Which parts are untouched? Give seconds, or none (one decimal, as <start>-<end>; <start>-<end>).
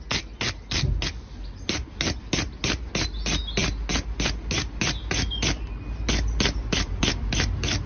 0.0-7.9